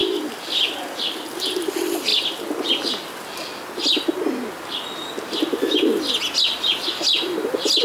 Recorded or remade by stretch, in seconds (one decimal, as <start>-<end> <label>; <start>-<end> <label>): 0.0-7.8 recorded